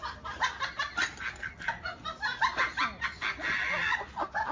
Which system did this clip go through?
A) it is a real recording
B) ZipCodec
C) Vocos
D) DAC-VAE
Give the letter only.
A